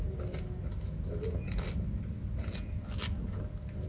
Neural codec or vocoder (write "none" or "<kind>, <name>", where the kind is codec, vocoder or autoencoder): none